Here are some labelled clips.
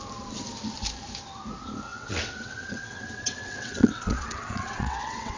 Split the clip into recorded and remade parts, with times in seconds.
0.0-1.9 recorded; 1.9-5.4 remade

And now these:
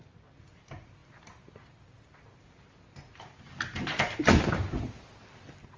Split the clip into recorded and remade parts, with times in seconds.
0.0-5.8 recorded

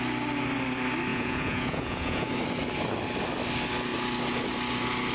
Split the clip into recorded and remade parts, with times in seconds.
0.0-1.1 recorded; 1.1-2.3 remade; 2.3-5.1 recorded

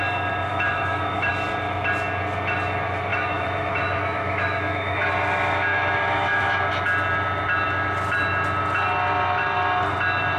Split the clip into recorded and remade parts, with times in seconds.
0.0-0.5 recorded; 0.5-1.3 remade; 1.3-3.1 recorded; 3.1-5.1 remade; 5.1-5.7 recorded; 5.7-6.6 remade; 6.6-10.4 recorded